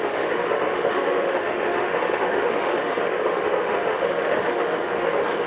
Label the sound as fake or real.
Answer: fake